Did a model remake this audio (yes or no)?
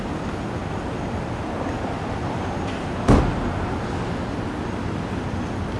no